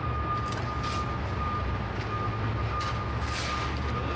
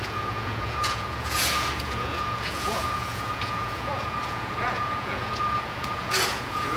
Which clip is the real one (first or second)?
first